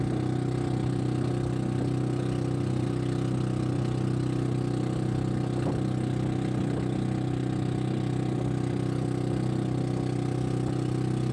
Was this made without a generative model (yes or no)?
yes